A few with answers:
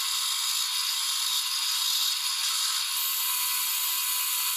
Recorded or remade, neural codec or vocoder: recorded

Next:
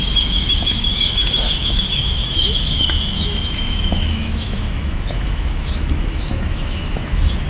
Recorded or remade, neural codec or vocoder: remade, autoencoder, DAC-VAE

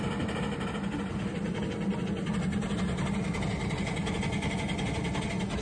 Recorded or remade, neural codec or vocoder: recorded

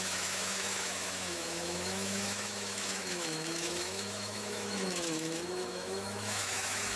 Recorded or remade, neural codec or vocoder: remade, autoencoder, DAC-VAE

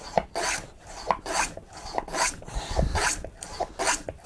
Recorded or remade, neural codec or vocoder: recorded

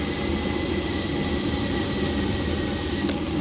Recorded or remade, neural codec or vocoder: recorded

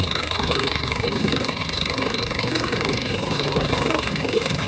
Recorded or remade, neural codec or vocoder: remade, codec, SNAC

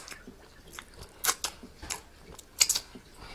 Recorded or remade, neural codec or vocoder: recorded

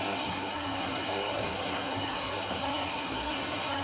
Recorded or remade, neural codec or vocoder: remade, codec, SNAC